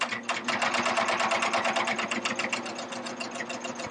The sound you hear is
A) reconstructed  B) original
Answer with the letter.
B